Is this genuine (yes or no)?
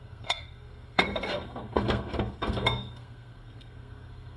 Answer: no